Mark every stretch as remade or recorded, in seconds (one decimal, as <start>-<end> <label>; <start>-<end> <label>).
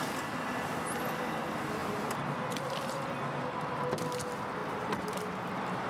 0.0-1.8 recorded; 1.8-2.4 remade; 2.4-4.6 recorded; 4.6-5.5 remade; 5.5-5.9 recorded